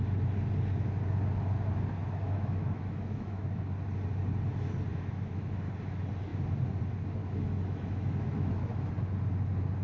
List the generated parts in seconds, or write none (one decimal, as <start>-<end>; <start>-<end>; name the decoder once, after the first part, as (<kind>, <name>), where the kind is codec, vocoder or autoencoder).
2.0-3.6 (autoencoder, DAC-VAE); 4.9-5.7; 7.2-8.9